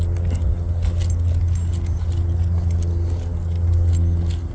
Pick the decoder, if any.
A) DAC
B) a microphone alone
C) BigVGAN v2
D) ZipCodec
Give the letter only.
B